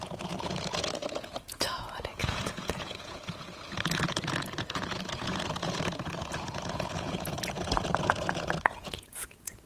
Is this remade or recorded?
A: remade